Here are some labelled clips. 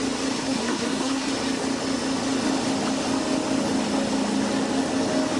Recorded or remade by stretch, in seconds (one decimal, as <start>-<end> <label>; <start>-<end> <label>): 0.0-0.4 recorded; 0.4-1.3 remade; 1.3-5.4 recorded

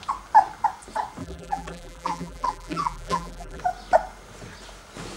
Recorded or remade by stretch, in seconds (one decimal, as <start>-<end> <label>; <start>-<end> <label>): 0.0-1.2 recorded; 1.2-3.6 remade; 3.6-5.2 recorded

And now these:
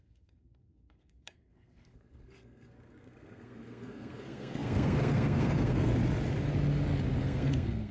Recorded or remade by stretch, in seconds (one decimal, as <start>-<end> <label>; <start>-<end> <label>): 0.0-5.9 remade; 5.9-7.2 recorded; 7.2-7.9 remade

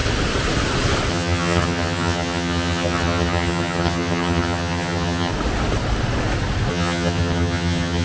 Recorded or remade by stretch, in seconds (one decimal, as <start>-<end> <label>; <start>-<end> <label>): 0.0-1.1 recorded; 1.1-5.3 remade; 5.3-6.7 recorded; 6.7-8.0 remade

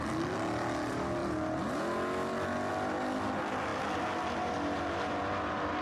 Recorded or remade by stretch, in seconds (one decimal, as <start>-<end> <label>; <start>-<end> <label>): 0.0-5.8 recorded

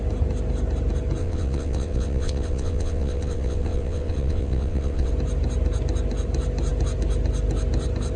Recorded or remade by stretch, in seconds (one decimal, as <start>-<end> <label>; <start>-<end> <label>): 0.0-1.2 recorded; 1.2-5.1 remade; 5.1-8.2 recorded

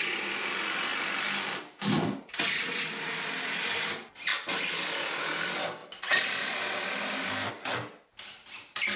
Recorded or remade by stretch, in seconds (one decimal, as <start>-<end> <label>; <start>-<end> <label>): 0.0-9.0 recorded

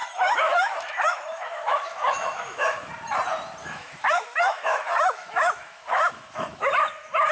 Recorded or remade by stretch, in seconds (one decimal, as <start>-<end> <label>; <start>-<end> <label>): 0.0-2.9 remade; 2.9-3.6 recorded; 3.6-6.7 remade; 6.7-7.3 recorded